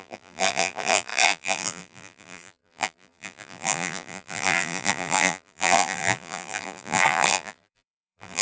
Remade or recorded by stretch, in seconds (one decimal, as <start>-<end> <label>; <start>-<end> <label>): 0.0-8.4 remade